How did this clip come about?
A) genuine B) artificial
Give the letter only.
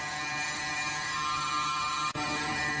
B